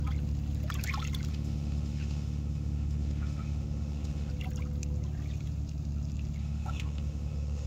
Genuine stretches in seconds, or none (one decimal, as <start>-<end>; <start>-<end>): 0.0-1.3; 4.3-6.4